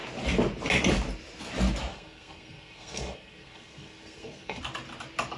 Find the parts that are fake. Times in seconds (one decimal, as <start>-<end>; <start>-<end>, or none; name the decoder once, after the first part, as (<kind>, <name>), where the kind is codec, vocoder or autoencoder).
1.9-4.6 (codec, SNAC)